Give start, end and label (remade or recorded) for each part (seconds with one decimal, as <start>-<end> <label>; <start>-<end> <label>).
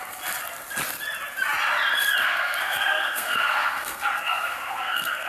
0.0-2.2 recorded; 2.2-5.3 remade